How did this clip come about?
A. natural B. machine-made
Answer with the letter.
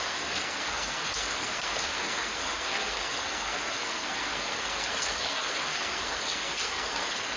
B